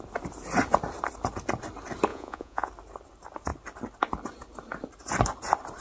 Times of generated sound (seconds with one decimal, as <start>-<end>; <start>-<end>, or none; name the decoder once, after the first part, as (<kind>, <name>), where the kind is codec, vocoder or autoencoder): 2.1-2.7 (vocoder, Vocos)